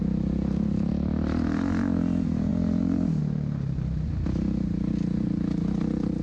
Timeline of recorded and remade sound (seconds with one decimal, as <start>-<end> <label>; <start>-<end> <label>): 0.0-6.2 recorded